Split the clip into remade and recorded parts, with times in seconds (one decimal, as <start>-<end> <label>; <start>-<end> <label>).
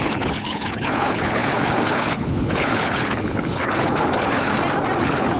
0.0-4.5 remade; 4.5-5.0 recorded; 5.0-5.4 remade